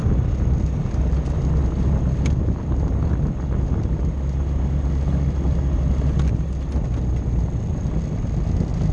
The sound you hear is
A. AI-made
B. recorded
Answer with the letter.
B